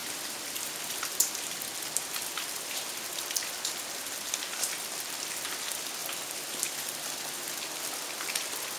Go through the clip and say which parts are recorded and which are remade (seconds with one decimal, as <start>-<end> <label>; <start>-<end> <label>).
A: 0.0-1.3 remade; 1.3-6.0 recorded; 6.0-7.6 remade; 7.6-8.8 recorded